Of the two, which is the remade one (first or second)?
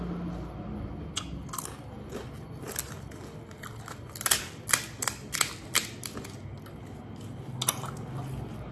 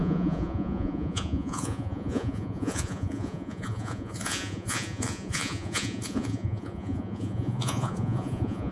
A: second